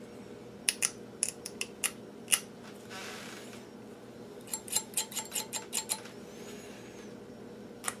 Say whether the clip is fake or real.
real